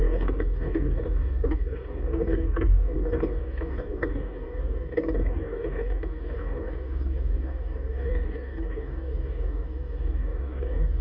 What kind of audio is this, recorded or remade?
remade